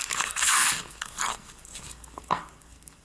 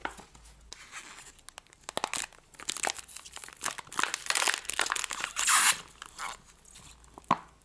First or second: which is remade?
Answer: first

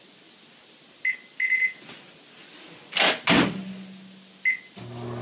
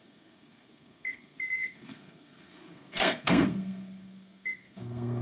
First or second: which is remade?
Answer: second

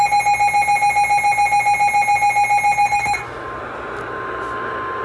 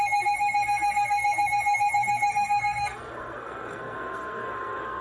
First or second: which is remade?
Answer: second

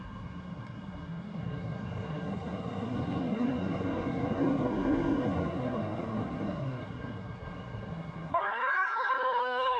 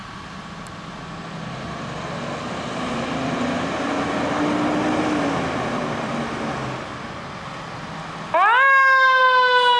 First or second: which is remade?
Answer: first